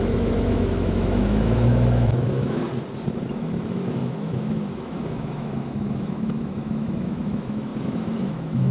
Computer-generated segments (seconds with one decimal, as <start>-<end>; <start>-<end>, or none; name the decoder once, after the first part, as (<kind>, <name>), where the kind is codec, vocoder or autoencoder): 0.0-2.6 (autoencoder, DAC-VAE); 3.3-8.7